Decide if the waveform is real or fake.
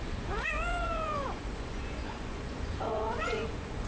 fake